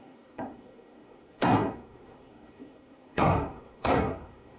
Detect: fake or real fake